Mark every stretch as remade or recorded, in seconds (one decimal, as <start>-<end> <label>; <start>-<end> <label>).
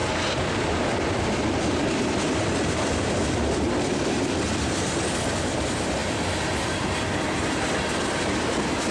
0.0-1.7 recorded; 1.7-8.9 remade